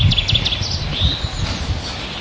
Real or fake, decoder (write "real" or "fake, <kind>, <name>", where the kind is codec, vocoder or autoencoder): real